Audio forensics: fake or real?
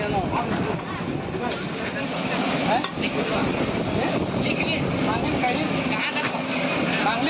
real